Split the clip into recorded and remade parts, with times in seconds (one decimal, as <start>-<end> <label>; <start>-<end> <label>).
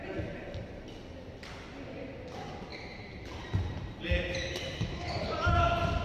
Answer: 0.0-2.7 recorded; 2.7-5.5 remade; 5.5-6.0 recorded